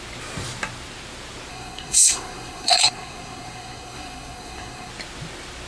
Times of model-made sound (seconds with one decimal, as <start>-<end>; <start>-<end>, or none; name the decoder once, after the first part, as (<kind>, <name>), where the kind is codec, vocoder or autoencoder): 1.5-4.9 (codec, SNAC)